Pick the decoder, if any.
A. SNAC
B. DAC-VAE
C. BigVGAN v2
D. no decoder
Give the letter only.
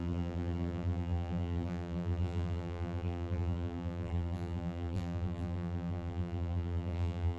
C